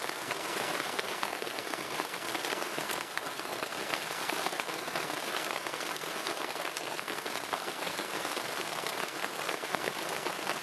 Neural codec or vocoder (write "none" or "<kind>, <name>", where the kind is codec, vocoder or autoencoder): codec, SNAC